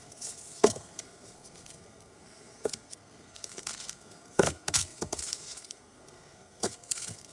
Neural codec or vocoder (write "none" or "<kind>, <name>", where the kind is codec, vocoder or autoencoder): codec, SNAC